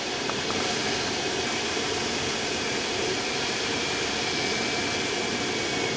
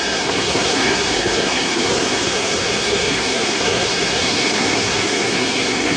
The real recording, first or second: first